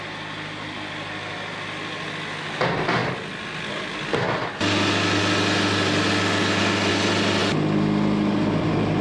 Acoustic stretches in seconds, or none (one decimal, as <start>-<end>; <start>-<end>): 0.0-9.0